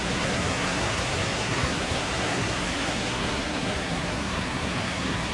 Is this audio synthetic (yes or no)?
yes